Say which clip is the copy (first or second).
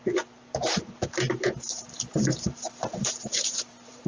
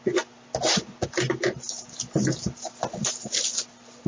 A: first